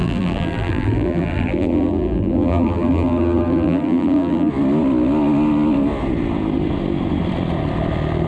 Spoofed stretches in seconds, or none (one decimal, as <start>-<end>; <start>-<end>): 0.0-4.5